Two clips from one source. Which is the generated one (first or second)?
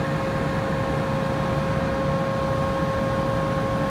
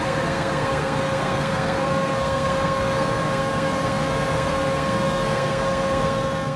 second